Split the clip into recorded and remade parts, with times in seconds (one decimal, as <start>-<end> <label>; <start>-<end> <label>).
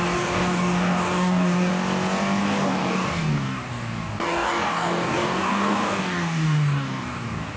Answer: 0.0-1.7 remade; 1.7-2.4 recorded; 2.4-7.6 remade